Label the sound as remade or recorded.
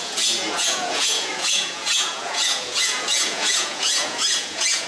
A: remade